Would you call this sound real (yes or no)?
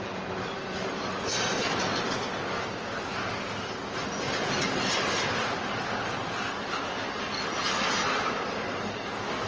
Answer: yes